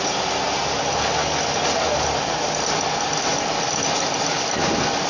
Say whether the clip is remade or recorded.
recorded